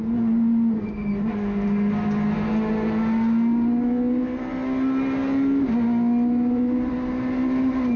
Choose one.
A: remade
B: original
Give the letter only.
B